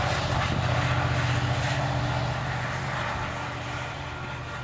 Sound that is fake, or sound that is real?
real